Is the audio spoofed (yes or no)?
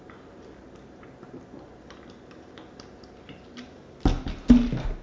no